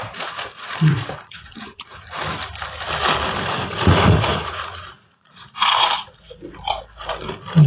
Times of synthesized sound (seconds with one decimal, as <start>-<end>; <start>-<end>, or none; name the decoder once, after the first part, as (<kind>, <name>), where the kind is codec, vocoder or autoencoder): 0.0-2.1 (vocoder, Vocos); 3.6-6.3

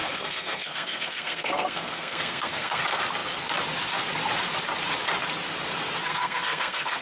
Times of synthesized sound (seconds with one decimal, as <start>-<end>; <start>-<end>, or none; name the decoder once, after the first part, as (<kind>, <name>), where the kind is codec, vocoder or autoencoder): 0.0-2.8 (codec, SNAC); 6.1-7.0

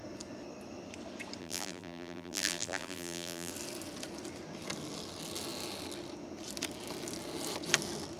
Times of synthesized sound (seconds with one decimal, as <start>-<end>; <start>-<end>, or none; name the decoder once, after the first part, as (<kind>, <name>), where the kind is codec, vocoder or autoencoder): 1.4-3.5 (vocoder, BigVGAN v2)

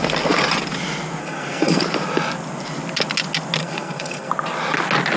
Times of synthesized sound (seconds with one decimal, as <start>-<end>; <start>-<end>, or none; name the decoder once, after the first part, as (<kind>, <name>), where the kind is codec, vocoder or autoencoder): 1.2-1.8 (codec, SNAC); 3.6-4.3

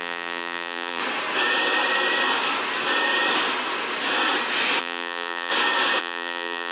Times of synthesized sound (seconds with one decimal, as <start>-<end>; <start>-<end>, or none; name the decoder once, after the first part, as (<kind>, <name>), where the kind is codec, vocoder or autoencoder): 0.0-1.0 (vocoder, BigVGAN v2); 4.8-5.5; 6.0-6.7

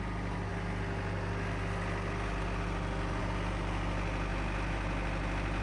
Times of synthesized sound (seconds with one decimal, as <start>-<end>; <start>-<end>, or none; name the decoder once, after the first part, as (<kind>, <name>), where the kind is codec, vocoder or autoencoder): none

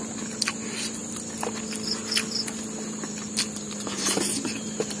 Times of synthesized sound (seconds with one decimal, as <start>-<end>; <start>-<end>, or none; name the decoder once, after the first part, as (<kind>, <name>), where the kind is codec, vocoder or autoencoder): none